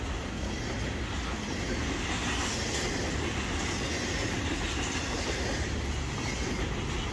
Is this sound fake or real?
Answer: real